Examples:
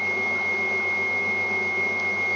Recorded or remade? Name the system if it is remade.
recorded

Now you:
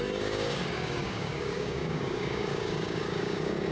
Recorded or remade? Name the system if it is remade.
remade, codec, DAC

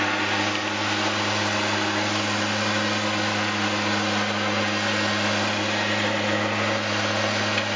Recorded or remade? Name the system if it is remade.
recorded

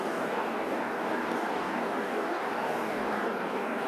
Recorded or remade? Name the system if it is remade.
remade, codec, DAC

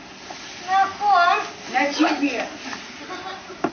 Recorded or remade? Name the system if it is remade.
recorded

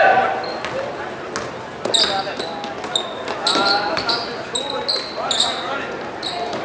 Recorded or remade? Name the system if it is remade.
recorded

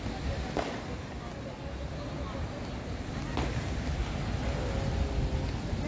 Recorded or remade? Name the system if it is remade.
recorded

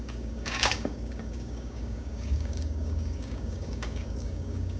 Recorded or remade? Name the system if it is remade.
remade, codec, DAC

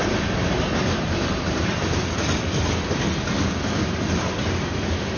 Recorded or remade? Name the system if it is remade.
recorded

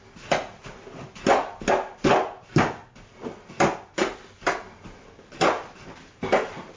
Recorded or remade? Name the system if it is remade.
recorded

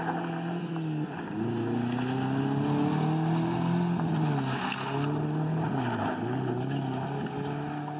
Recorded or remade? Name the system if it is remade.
recorded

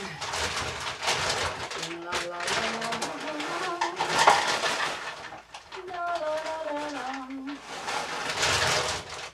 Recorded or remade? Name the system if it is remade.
recorded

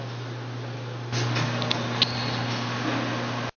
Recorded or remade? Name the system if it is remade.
recorded